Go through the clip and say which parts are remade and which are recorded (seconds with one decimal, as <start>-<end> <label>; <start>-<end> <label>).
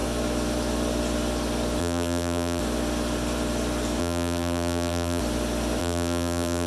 0.0-1.8 recorded; 1.8-2.6 remade; 2.6-4.0 recorded; 4.0-5.2 remade; 5.2-5.8 recorded; 5.8-6.7 remade